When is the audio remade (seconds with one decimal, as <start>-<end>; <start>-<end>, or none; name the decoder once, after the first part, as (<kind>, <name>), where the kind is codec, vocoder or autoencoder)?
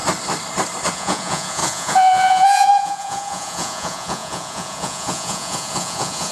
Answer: 0.9-6.3 (vocoder, Vocos)